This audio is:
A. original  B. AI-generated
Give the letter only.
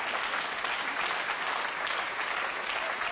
A